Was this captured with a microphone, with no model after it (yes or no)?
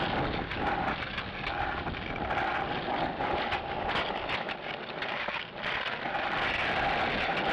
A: yes